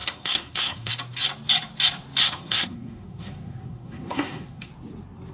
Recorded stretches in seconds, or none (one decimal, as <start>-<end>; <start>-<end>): 0.9-2.2; 4.7-5.3